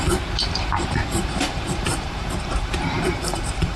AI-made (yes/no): yes